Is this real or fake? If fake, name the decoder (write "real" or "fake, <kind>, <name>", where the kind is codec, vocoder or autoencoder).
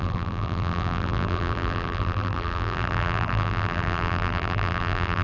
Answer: fake, vocoder, BigVGAN v2